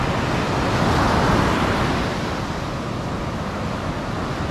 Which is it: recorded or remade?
recorded